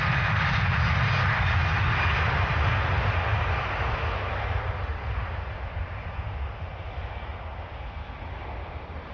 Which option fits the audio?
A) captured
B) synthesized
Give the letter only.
A